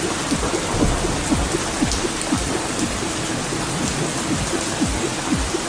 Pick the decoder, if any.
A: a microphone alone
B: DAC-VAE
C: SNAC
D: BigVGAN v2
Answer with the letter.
A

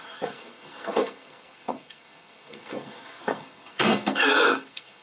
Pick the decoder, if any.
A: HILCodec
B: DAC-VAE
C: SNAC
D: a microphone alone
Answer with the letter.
C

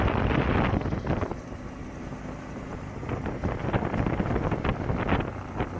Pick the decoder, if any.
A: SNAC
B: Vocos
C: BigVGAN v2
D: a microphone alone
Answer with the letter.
D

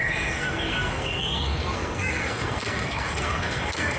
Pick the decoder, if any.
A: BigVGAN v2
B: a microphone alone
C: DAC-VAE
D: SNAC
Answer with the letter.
D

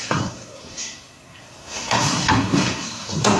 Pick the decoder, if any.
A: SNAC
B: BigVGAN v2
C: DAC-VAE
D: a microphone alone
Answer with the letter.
A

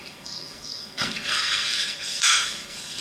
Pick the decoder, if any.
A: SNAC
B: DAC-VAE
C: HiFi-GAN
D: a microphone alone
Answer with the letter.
A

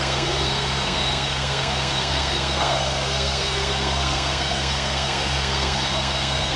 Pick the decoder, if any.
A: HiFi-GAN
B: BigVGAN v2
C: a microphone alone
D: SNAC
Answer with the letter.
D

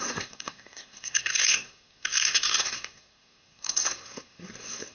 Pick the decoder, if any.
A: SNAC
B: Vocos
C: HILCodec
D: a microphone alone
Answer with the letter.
A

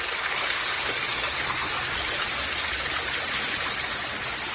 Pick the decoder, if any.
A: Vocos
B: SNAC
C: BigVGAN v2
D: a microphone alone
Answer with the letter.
D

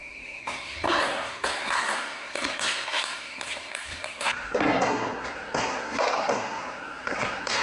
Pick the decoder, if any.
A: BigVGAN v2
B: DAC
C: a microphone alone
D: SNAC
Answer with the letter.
D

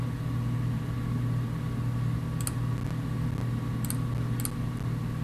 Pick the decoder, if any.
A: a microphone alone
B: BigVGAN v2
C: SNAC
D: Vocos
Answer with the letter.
A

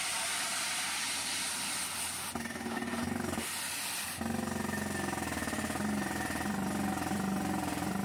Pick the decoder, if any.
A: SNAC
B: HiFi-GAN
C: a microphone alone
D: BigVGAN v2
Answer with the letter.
C